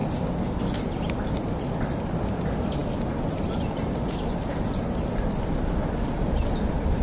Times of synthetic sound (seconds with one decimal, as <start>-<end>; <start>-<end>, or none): none